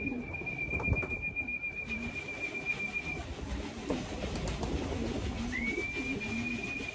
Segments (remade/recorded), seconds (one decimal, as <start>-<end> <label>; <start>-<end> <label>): 0.0-1.5 recorded; 1.5-2.6 remade; 2.6-3.2 recorded; 3.2-3.9 remade; 3.9-6.9 recorded